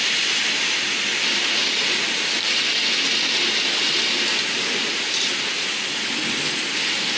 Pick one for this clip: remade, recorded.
recorded